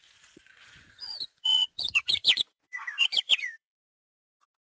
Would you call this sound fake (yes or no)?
yes